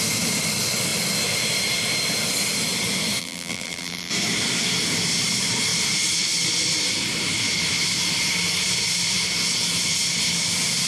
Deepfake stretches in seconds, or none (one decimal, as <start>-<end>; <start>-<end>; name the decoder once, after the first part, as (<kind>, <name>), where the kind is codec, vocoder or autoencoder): 3.2-4.1 (vocoder, BigVGAN v2)